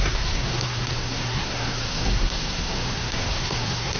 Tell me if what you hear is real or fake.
fake